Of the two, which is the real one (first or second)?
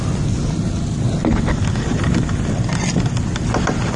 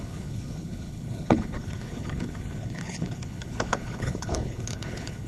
first